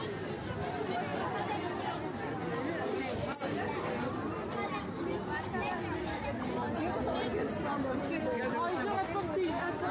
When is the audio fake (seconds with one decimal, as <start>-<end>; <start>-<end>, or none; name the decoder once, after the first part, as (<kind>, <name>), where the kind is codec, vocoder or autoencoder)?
7.3-8.5 (vocoder, BigVGAN v2)